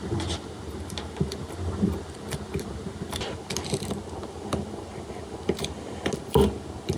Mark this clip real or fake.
real